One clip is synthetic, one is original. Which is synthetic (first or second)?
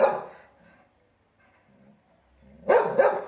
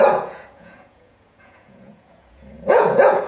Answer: second